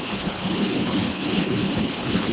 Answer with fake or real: fake